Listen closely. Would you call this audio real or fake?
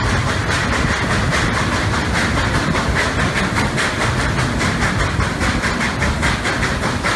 real